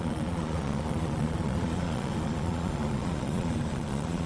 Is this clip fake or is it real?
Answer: fake